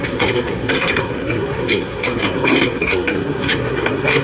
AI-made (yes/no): yes